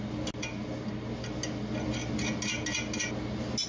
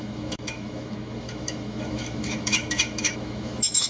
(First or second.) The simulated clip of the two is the second